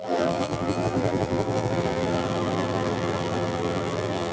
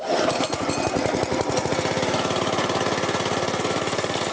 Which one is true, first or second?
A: second